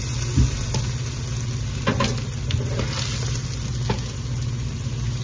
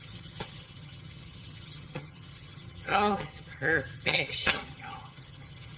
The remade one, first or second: second